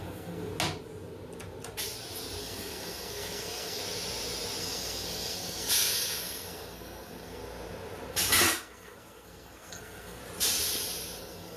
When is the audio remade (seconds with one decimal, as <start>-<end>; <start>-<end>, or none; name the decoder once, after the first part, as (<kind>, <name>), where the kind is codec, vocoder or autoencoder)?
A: 0.0-0.5 (codec, SNAC); 2.4-3.8; 4.6-7.4; 8.1-10.2; 11.2-11.6